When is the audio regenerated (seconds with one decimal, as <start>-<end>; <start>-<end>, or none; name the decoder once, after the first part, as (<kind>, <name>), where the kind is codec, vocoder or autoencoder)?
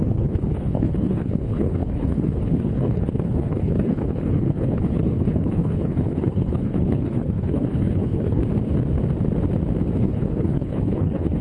0.0-8.4 (codec, HILCodec); 10.0-11.4